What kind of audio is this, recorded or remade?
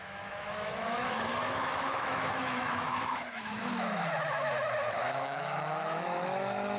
remade